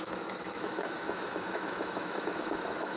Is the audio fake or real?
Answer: fake